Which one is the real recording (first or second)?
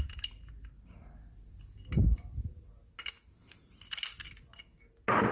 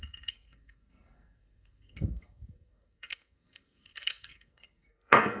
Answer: first